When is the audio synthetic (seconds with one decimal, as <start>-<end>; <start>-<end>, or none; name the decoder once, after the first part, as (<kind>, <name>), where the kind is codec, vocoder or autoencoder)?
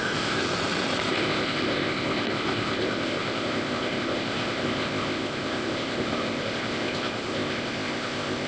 0.0-0.4 (codec, ZipCodec); 1.1-8.5